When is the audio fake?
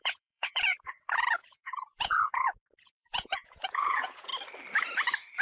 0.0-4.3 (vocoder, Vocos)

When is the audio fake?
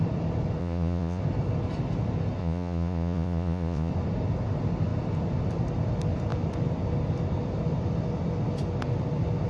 0.6-1.2 (vocoder, Vocos); 2.4-3.9